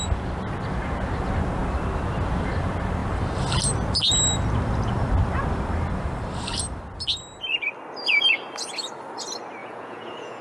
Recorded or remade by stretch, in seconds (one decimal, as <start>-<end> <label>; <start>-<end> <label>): 0.0-9.6 recorded; 9.6-10.4 remade